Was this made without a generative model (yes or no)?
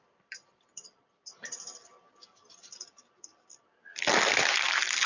no